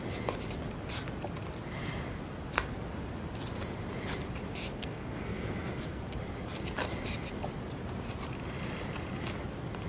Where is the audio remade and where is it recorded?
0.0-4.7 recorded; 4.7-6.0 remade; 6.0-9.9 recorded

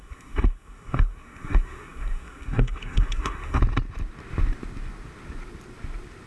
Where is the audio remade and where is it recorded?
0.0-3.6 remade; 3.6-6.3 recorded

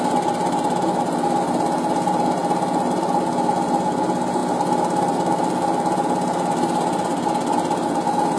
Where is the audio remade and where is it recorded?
0.0-8.4 recorded